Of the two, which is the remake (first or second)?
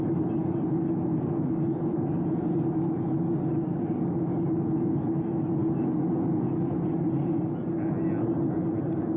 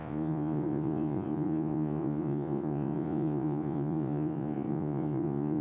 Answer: second